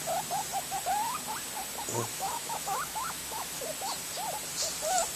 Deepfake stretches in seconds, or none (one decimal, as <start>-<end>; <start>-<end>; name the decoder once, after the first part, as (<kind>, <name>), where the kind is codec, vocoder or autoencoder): 2.1-3.6 (autoencoder, DAC-VAE)